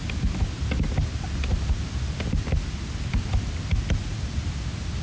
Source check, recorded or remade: recorded